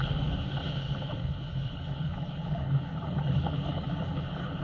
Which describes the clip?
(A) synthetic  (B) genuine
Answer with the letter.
A